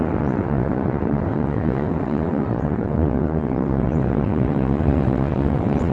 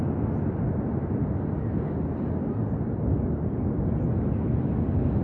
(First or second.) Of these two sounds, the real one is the second